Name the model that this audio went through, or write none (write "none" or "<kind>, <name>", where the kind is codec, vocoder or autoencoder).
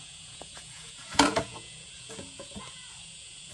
vocoder, Vocos